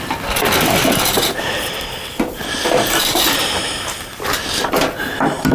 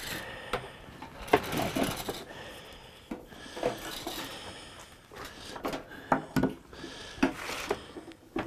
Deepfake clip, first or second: first